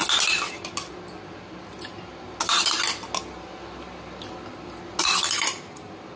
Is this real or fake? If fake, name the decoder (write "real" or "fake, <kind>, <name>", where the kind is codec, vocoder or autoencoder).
real